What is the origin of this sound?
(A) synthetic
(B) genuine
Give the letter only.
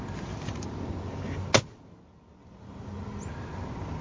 B